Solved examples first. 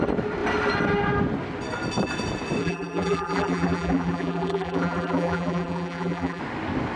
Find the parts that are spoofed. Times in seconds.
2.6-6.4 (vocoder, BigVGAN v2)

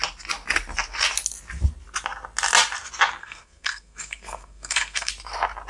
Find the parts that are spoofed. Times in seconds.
3.2-5.1 (codec, SNAC)

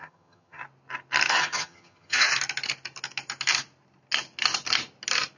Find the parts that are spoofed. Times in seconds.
0.0-0.6 (vocoder, HiFi-GAN); 1.3-2.3

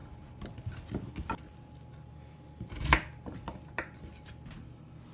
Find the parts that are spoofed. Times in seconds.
none

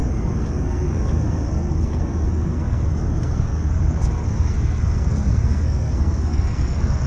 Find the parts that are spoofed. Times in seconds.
0.0-7.1 (codec, SNAC)

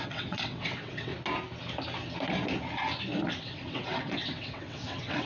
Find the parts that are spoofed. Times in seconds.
0.0-1.1 (vocoder, WaveNeXt); 3.3-5.3